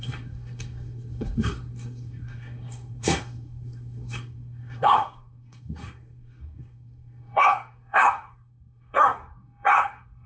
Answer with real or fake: fake